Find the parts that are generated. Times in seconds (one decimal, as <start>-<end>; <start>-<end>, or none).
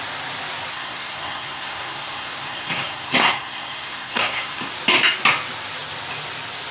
0.7-4.7